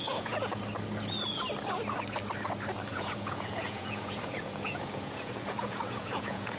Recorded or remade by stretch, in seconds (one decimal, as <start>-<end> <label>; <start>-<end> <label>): 0.0-0.6 remade; 0.6-2.9 recorded; 2.9-6.6 remade